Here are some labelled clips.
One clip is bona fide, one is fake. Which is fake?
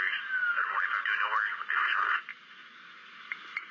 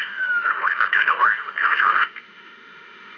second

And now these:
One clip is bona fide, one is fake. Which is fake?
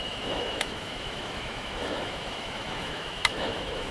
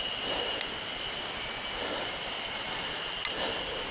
first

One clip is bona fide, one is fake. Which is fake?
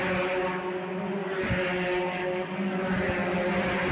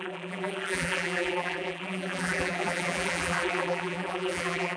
second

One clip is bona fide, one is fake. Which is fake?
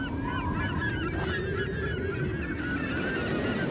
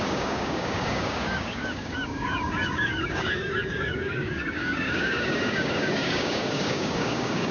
second